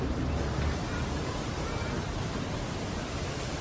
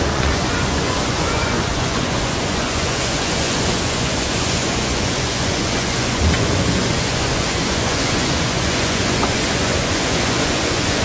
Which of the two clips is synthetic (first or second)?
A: second